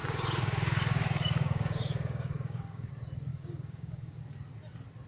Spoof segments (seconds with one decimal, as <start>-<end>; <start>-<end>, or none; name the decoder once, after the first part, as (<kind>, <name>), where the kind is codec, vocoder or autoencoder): 0.0-2.9 (codec, DAC); 3.3-4.2